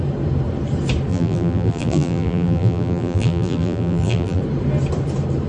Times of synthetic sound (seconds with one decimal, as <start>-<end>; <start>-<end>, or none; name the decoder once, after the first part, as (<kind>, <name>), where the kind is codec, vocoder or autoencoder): 1.1-4.4 (vocoder, BigVGAN v2)